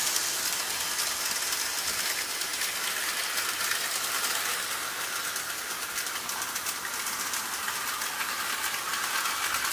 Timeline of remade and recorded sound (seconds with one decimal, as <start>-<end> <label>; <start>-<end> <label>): 0.0-9.7 recorded